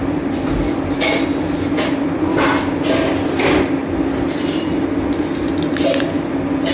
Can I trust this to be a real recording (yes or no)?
yes